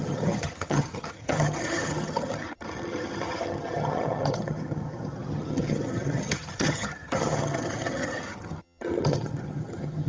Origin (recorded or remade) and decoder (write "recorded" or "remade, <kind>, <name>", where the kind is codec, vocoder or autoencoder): remade, vocoder, HiFi-GAN